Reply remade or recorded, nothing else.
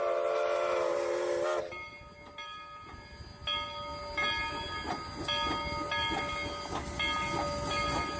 recorded